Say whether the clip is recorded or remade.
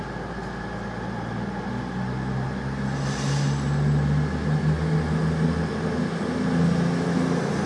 recorded